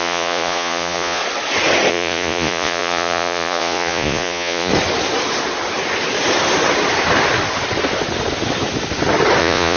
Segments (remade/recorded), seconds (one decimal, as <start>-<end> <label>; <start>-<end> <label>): 0.0-1.2 remade; 1.2-1.9 recorded; 1.9-4.7 remade; 4.7-9.4 recorded; 9.4-9.8 remade